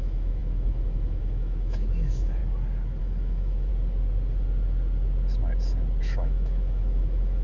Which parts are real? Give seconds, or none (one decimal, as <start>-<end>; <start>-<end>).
2.4-3.0; 3.7-6.0